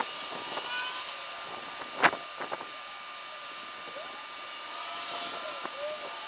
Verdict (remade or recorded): recorded